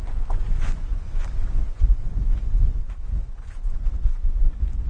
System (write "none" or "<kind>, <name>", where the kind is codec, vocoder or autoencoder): vocoder, Vocos